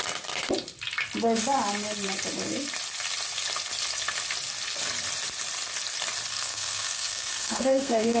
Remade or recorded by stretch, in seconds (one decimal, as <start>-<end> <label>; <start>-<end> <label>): 0.0-6.3 recorded; 6.3-8.2 remade